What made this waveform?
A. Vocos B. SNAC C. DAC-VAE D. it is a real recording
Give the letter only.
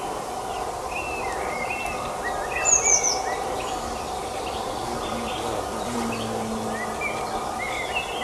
D